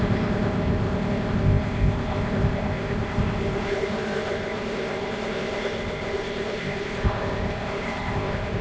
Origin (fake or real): fake